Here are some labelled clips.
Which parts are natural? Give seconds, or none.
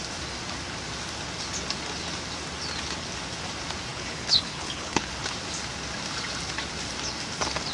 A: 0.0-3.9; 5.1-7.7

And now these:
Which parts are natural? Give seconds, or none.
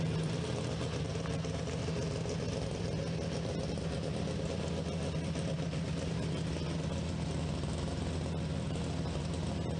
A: 0.0-9.8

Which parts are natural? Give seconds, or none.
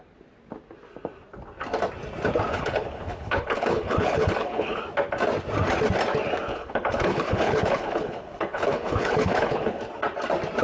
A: 0.0-2.5; 4.8-6.5; 9.8-10.6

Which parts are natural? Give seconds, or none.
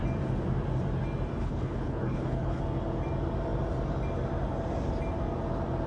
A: 0.0-1.4; 2.6-5.9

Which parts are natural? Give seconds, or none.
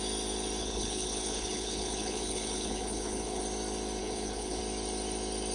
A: 0.0-0.6; 3.4-4.0; 4.6-5.5